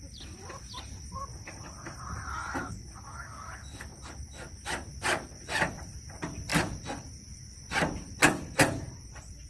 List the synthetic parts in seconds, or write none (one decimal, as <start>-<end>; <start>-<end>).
0.0-3.9; 5.4-6.5; 8.2-9.5